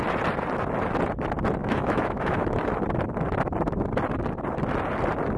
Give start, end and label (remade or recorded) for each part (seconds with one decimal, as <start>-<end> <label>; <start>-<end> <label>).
0.0-1.6 recorded; 1.6-2.5 remade; 2.5-5.4 recorded